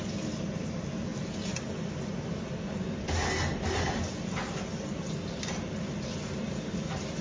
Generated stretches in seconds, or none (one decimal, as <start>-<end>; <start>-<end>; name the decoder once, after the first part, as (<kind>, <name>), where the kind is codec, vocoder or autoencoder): none